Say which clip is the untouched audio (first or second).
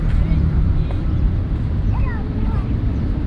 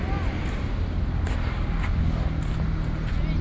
second